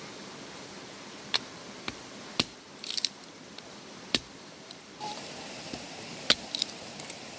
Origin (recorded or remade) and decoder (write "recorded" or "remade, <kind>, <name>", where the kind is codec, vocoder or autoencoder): remade, vocoder, BigVGAN v2